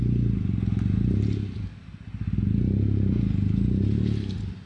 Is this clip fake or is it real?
real